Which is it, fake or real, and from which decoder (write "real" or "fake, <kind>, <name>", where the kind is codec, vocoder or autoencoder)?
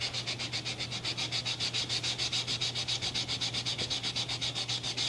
real